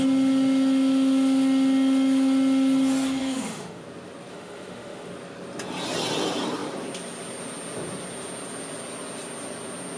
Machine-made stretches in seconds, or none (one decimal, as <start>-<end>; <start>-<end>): 3.2-3.8; 4.3-5.1